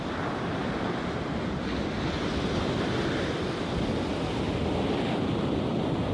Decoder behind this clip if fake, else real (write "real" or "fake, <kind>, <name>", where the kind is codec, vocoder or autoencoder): real